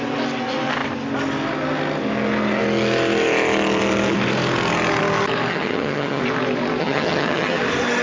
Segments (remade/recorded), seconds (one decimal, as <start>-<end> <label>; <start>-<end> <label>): 0.0-5.5 recorded; 5.5-6.2 remade; 6.2-6.8 recorded; 6.8-7.6 remade; 7.6-8.0 recorded